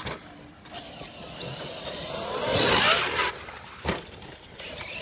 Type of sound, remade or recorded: recorded